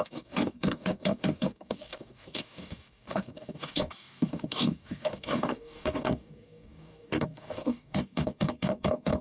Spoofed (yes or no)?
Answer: yes